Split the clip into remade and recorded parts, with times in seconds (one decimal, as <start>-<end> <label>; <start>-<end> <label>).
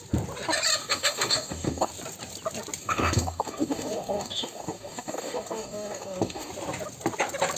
0.0-0.8 recorded; 0.8-1.9 remade; 1.9-2.8 recorded; 2.8-6.5 remade; 6.5-7.6 recorded